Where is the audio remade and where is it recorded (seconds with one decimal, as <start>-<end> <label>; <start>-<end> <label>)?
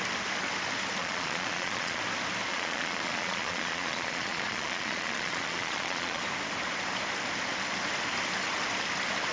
0.0-1.0 recorded; 1.0-2.0 remade; 2.0-2.5 recorded; 2.5-6.2 remade; 6.2-9.3 recorded